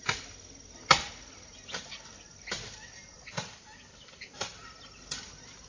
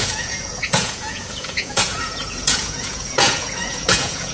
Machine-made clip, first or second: second